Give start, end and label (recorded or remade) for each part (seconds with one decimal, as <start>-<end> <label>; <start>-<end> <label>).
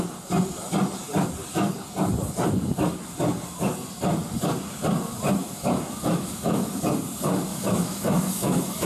0.0-5.4 recorded; 5.4-6.8 remade; 6.8-7.5 recorded; 7.5-8.9 remade